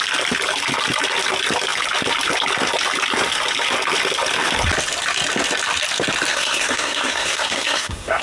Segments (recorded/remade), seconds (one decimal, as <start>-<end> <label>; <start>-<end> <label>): 0.0-6.3 recorded; 6.3-8.2 remade